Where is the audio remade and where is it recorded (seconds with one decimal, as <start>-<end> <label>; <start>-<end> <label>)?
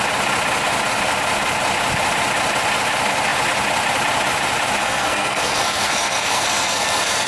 0.0-4.8 recorded; 4.8-7.3 remade